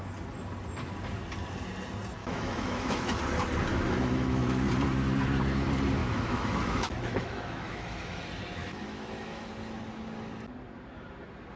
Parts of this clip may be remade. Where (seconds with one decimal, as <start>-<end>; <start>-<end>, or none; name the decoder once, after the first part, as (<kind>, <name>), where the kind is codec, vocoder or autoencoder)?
2.2-3.2 (autoencoder, DAC-VAE); 3.7-4.7; 6.0-8.2; 8.6-9.5